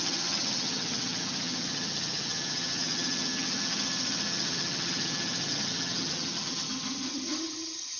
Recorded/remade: remade